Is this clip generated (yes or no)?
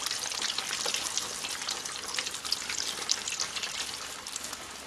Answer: no